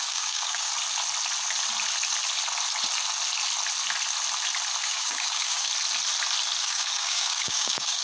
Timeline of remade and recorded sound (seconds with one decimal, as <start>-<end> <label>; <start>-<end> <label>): 0.0-0.7 remade; 0.7-4.8 recorded; 4.8-5.7 remade; 5.7-6.6 recorded; 6.6-8.0 remade